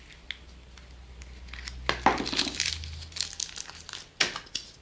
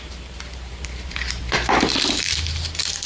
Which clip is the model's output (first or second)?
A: second